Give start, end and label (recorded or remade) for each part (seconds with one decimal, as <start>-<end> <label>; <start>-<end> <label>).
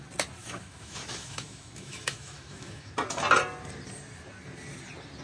0.0-0.4 recorded; 0.4-2.9 remade; 2.9-5.2 recorded